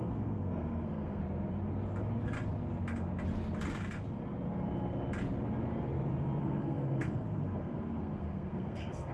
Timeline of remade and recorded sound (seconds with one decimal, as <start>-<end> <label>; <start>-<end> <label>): 0.0-1.2 remade; 1.2-6.4 recorded; 6.4-9.1 remade